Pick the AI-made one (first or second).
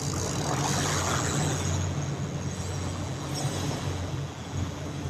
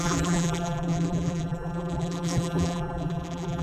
second